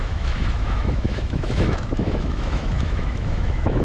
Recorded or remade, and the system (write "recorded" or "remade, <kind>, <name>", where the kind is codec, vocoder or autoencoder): remade, autoencoder, DAC-VAE